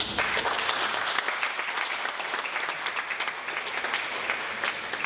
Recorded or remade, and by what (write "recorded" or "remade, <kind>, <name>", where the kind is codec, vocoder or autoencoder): recorded